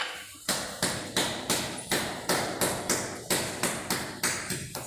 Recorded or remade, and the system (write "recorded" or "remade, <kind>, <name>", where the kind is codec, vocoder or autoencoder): recorded